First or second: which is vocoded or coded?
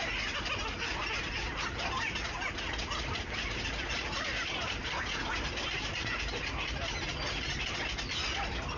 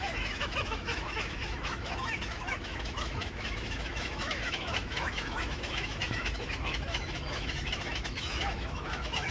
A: second